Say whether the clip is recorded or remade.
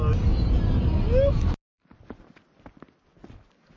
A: recorded